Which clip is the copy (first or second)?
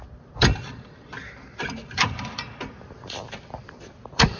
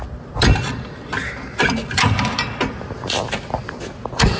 first